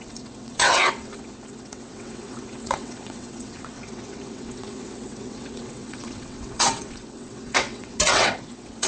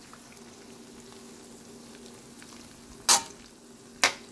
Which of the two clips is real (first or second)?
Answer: second